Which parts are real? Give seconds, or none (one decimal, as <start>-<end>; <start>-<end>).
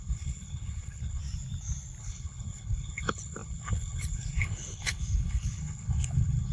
1.2-2.0